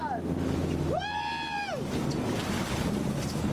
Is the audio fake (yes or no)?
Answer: no